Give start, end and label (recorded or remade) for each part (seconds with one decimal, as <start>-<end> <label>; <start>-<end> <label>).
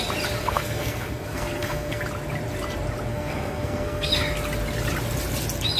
0.0-0.4 recorded; 0.4-2.0 remade; 2.0-3.1 recorded; 3.1-4.1 remade; 4.1-5.8 recorded